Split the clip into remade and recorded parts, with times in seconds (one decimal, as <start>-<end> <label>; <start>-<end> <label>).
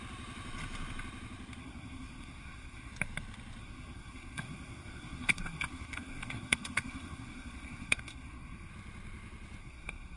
0.0-1.6 recorded; 1.6-2.9 remade; 2.9-3.6 recorded; 3.6-8.7 remade; 8.7-9.6 recorded; 9.6-10.2 remade